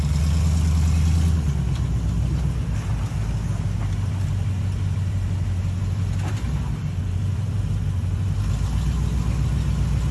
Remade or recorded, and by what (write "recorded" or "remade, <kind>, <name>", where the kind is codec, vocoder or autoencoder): recorded